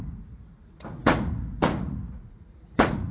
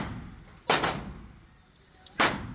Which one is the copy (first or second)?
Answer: first